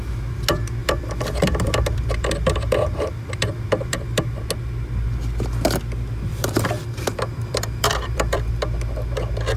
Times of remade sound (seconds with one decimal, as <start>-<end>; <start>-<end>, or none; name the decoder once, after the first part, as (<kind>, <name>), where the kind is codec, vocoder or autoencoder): 0.8-4.4 (vocoder, BigVGAN v2); 6.3-8.5